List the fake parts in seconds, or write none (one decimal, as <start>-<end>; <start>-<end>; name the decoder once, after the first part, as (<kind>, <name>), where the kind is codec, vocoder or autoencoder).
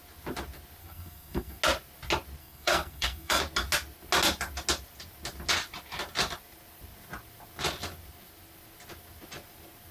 0.8-1.6 (codec, SNAC); 2.4-3.4